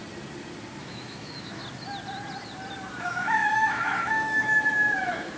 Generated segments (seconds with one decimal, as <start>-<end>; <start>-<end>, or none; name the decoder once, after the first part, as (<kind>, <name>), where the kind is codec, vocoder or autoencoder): 0.8-1.6 (autoencoder, DAC-VAE); 2.9-5.4